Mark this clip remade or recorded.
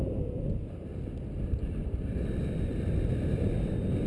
recorded